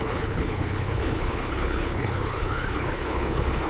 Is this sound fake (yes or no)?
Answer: yes